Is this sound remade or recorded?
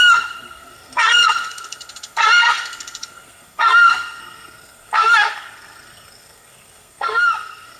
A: remade